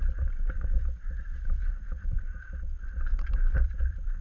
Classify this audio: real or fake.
fake